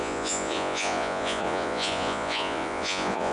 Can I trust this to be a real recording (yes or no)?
no